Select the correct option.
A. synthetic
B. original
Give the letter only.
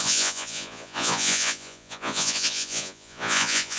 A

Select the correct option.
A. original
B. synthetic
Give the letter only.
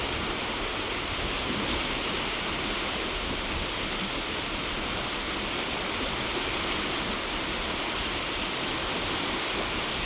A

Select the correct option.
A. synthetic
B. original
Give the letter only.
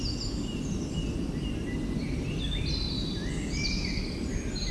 B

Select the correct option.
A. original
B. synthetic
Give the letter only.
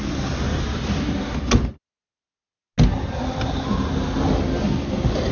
A